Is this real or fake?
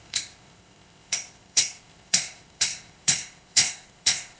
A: fake